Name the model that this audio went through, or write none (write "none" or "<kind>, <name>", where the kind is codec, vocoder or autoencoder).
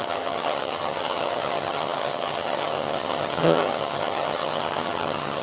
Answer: vocoder, HiFi-GAN